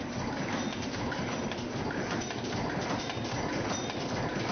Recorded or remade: remade